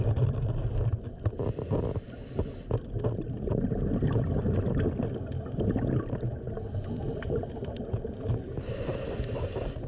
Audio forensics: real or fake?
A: real